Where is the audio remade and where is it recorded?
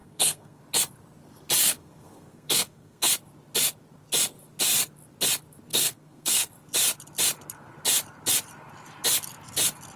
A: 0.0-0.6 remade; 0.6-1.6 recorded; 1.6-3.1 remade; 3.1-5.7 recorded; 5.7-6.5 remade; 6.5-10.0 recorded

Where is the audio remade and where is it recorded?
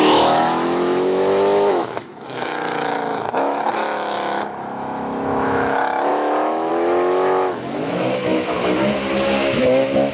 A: 0.0-10.1 remade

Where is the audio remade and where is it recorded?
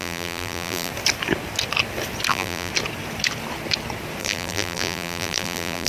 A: 0.0-0.9 remade; 0.9-2.3 recorded; 2.3-2.7 remade; 2.7-4.2 recorded; 4.2-5.9 remade